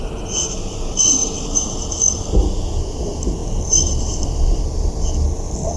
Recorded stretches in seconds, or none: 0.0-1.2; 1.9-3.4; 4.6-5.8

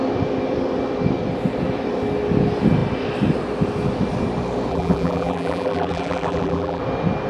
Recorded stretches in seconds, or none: 0.0-4.7; 6.8-7.3

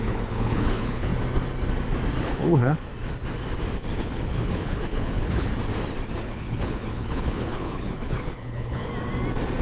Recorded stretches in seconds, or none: 1.1-2.2; 2.9-4.0; 5.5-6.2; 8.9-9.6

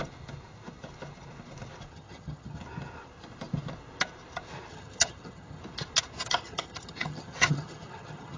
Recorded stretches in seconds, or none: 0.0-1.9; 2.6-4.7; 5.6-6.2

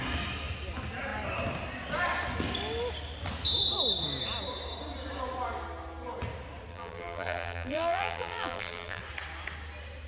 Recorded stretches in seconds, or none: 0.0-6.7; 9.0-10.1

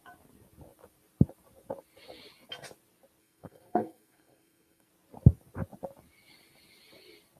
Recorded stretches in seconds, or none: 0.0-3.2; 4.9-7.4